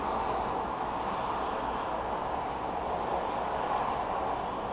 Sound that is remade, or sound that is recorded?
recorded